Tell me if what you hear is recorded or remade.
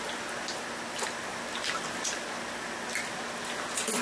recorded